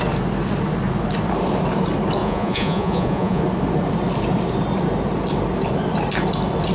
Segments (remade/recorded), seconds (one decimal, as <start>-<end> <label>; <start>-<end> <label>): 0.0-2.2 recorded; 2.2-3.4 remade; 3.4-6.7 recorded